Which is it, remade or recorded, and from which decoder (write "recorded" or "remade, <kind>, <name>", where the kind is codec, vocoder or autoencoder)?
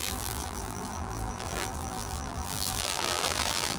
remade, vocoder, BigVGAN v2